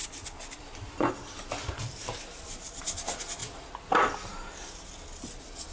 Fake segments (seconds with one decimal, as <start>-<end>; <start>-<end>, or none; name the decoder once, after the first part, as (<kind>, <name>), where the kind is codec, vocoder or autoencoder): 0.0-1.1 (vocoder, BigVGAN v2); 1.6-2.8; 3.4-5.2